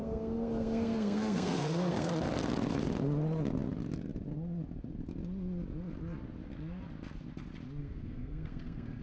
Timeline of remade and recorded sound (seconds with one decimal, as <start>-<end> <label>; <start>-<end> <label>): 0.0-2.1 remade; 2.1-7.8 recorded; 7.8-9.0 remade